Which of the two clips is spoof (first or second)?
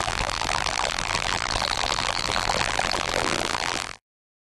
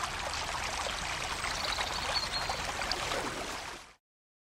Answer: first